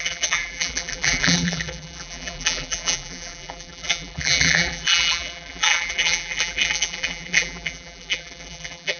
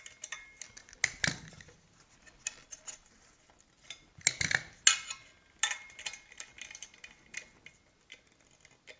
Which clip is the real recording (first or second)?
second